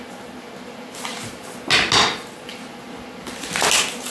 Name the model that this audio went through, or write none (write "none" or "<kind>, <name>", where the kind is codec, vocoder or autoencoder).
none